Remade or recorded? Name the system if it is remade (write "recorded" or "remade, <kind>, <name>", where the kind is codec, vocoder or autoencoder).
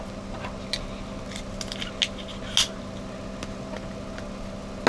recorded